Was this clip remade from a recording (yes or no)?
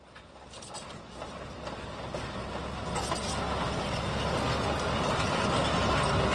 no